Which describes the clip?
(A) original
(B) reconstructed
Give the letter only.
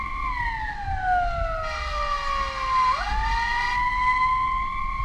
A